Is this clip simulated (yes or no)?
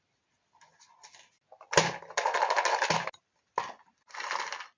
no